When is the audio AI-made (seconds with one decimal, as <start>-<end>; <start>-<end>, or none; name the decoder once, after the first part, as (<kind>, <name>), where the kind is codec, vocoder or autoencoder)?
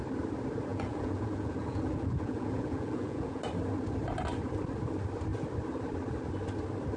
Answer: 0.7-3.4 (vocoder, Vocos)